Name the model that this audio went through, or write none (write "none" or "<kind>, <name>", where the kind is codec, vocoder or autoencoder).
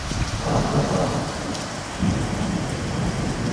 none